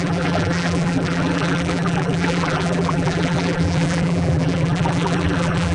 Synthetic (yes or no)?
yes